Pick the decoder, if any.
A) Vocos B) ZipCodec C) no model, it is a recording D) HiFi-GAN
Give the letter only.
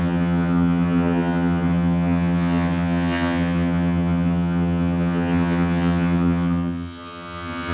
D